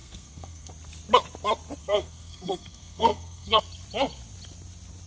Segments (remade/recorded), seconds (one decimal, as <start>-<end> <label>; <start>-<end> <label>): 0.0-0.7 remade; 0.7-1.8 recorded; 1.8-3.6 remade; 3.6-5.1 recorded